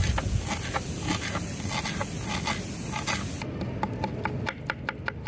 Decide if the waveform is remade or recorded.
recorded